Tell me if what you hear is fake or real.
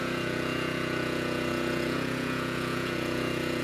fake